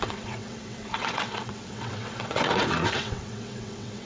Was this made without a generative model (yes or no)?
no